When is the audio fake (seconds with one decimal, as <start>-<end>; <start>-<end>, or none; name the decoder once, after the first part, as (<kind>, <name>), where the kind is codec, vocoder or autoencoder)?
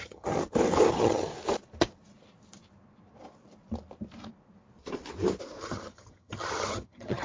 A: 0.0-0.4 (vocoder, HiFi-GAN); 0.9-1.3; 5.6-7.2